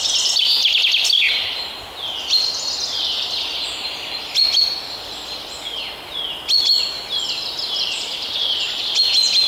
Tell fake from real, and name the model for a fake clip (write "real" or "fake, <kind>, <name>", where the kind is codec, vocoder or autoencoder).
real